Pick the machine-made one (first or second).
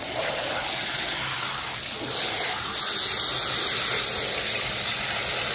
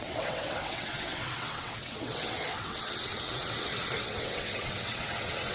second